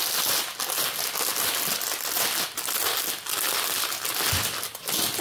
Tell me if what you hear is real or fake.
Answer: real